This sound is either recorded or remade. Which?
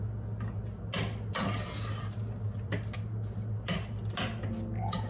recorded